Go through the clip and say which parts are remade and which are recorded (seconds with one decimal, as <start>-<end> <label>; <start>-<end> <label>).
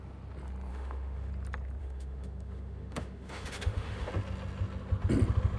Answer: 0.0-0.7 recorded; 0.7-1.3 remade; 1.3-1.8 recorded; 1.8-4.1 remade; 4.1-5.6 recorded